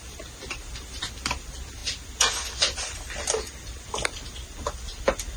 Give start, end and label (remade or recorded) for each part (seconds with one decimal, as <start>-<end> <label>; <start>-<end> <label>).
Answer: 0.0-5.4 recorded